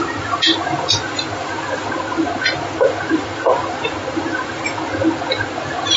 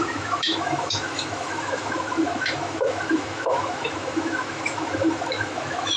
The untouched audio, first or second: first